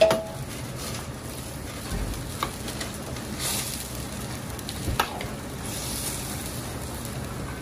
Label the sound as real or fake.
real